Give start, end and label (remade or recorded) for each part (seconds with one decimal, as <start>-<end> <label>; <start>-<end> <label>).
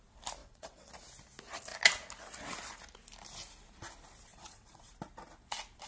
0.0-0.4 recorded; 0.4-0.9 remade; 0.9-4.3 recorded; 4.3-4.9 remade; 4.9-5.9 recorded